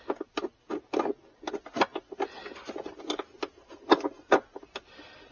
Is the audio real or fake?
real